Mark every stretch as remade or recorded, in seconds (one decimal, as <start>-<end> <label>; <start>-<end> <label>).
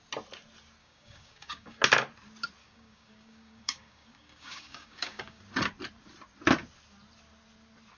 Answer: 0.0-0.8 recorded; 0.8-1.8 remade; 1.8-2.6 recorded; 2.6-5.4 remade; 5.4-8.0 recorded